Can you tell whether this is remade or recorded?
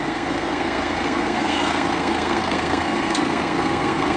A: remade